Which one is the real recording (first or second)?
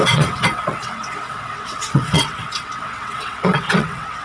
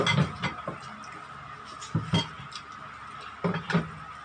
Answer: second